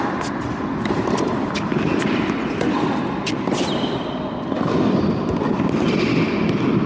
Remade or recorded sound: recorded